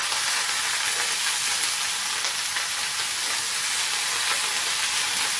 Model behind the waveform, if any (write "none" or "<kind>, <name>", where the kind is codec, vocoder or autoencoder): none